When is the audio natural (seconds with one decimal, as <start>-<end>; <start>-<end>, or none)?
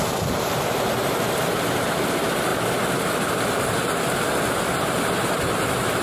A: 0.0-6.0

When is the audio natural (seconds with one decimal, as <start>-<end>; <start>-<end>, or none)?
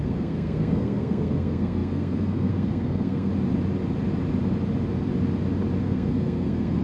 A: 3.3-5.8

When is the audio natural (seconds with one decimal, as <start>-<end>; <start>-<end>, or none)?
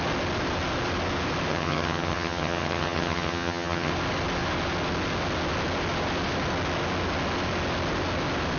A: 0.0-1.5; 3.9-8.6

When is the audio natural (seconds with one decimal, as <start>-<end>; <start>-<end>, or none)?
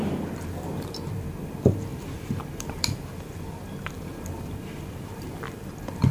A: 0.0-1.9; 5.6-6.1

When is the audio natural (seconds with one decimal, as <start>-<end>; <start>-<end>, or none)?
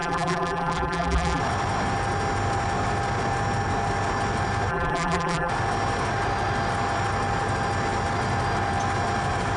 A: 1.4-4.7; 5.5-9.6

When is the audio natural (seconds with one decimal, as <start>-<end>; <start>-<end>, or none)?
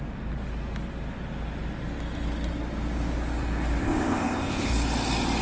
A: 0.0-3.8; 4.7-5.4